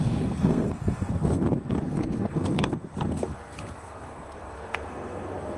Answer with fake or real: fake